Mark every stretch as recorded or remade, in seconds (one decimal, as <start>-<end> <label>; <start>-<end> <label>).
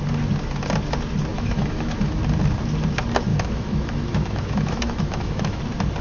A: 0.0-1.3 recorded; 1.3-2.2 remade; 2.2-3.3 recorded; 3.3-5.6 remade; 5.6-6.0 recorded